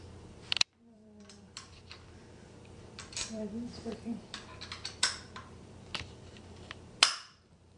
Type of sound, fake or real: fake